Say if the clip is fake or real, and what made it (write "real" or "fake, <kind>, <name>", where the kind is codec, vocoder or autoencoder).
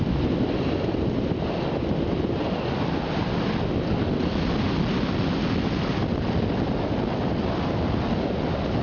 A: real